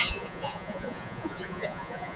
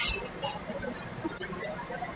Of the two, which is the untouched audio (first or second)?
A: second